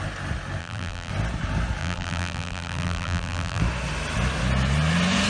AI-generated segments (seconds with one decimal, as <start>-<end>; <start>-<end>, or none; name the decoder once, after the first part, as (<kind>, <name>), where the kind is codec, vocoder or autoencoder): 0.6-1.1 (vocoder, BigVGAN v2); 1.8-3.6